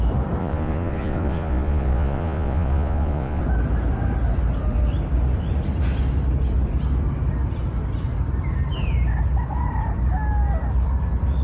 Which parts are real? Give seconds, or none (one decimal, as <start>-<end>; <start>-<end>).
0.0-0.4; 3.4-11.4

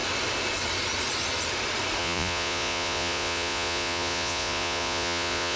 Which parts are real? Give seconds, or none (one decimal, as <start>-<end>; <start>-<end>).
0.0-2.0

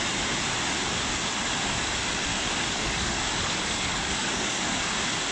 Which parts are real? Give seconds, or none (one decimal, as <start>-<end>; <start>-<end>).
0.0-2.3; 4.8-5.3

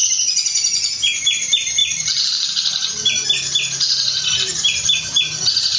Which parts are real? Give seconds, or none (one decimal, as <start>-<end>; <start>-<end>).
1.0-1.8; 2.5-5.8

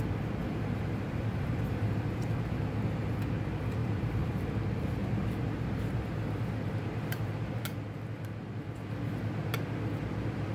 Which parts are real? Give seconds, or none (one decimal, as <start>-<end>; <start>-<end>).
0.0-0.4; 3.1-3.8; 4.5-5.0; 7.4-10.5